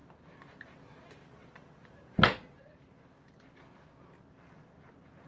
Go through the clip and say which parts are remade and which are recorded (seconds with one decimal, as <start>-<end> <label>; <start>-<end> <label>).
0.0-5.3 recorded